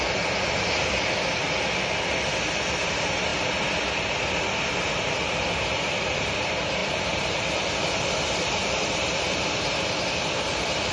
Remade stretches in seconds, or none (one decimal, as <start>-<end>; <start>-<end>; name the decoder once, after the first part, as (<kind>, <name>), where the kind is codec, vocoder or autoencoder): 6.8-7.7 (vocoder, BigVGAN v2); 8.6-10.9